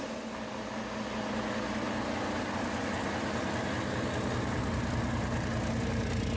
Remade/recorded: recorded